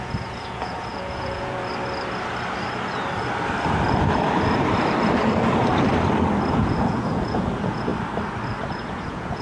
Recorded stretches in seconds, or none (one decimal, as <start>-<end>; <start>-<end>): 1.6-6.5; 7.9-8.7